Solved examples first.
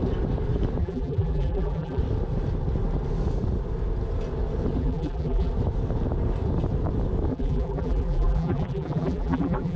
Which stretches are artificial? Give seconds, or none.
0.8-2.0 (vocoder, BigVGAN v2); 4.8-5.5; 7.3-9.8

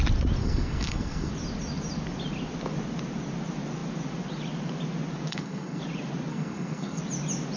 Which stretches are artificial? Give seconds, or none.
0.4-1.3 (codec, SNAC); 5.3-5.8; 6.3-7.0

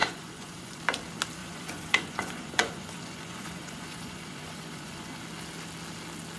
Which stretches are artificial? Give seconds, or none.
0.0-0.8 (vocoder, Vocos); 1.4-5.2

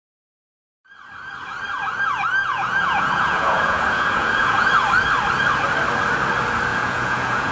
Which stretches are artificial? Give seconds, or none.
2.4-4.7 (vocoder, Vocos); 6.7-7.5

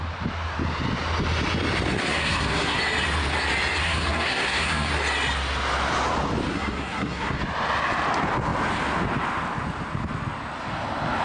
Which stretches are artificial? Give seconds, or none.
2.0-2.8 (codec, SNAC); 3.8-4.9; 6.5-7.4